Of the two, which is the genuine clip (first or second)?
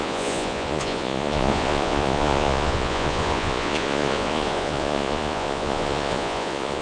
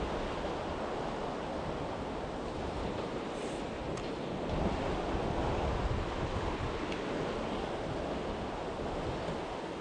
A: second